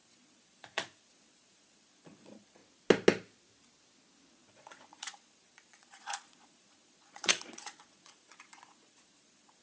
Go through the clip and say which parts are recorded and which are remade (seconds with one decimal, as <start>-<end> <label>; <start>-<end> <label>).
0.0-2.6 remade; 2.6-4.3 recorded; 4.3-9.6 remade